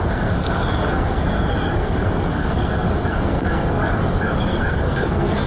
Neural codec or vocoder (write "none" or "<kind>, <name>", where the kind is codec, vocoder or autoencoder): codec, SNAC